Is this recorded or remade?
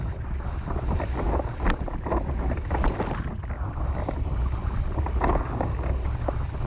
recorded